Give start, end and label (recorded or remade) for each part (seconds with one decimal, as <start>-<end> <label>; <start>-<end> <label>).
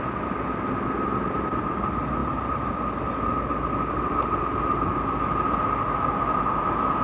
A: 0.0-7.0 recorded